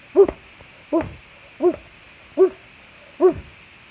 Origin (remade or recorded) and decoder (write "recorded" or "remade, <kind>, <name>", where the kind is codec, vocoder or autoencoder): recorded